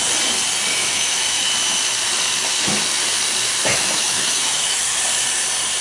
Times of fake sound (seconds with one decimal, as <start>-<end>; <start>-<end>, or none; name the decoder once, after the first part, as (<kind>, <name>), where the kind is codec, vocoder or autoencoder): 0.7-1.5 (autoencoder, DAC-VAE); 3.7-5.0